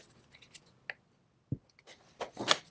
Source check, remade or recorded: recorded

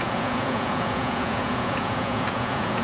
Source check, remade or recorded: remade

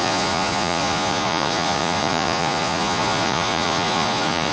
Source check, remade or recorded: remade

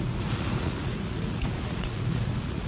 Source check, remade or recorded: remade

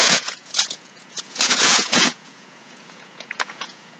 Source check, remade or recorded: remade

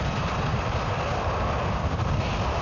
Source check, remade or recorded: recorded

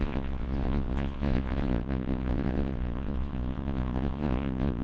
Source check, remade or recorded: remade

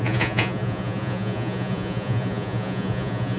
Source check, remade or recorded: remade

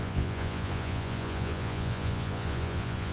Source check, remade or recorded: remade